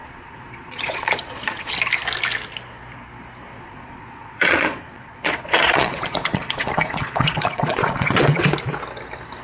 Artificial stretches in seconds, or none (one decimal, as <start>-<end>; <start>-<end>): 0.0-1.7; 3.5-8.4